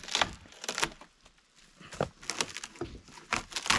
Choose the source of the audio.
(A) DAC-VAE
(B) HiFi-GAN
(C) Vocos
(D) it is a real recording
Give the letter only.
D